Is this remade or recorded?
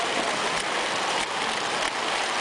recorded